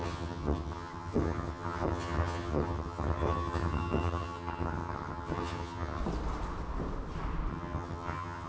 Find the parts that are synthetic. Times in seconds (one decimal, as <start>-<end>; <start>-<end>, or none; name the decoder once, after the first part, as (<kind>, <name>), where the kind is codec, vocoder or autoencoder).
0.0-6.0 (vocoder, HiFi-GAN); 7.5-8.5